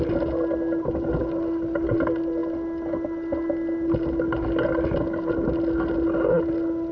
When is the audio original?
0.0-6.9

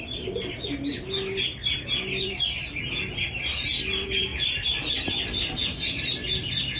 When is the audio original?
0.0-1.6; 2.4-4.3; 4.9-6.8

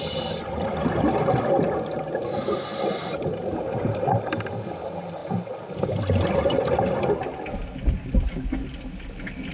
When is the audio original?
0.0-9.5